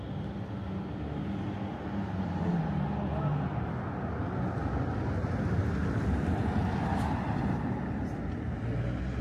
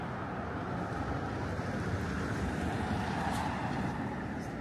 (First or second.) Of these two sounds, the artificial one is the second